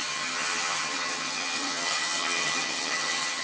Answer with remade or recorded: remade